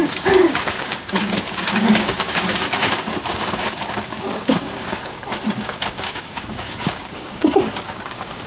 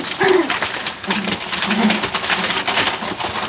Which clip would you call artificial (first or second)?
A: first